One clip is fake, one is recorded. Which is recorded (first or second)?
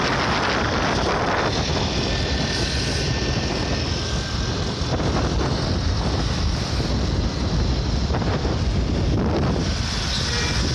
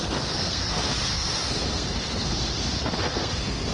first